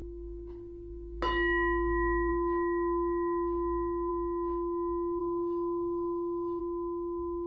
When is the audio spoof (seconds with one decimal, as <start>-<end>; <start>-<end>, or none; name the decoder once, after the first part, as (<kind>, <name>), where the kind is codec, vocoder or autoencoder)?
5.2-6.6 (autoencoder, DAC-VAE)